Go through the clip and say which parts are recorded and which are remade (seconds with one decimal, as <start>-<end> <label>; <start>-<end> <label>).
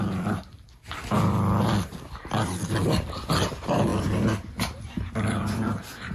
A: 0.0-3.9 remade; 3.9-4.8 recorded; 4.8-6.1 remade